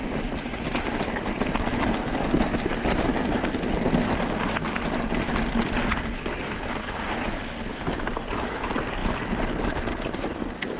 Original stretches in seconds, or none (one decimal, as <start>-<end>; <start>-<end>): 0.0-10.8